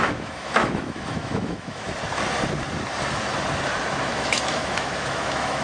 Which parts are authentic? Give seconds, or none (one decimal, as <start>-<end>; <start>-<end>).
2.0-4.1